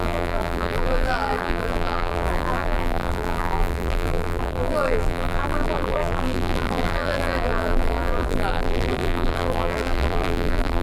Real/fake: fake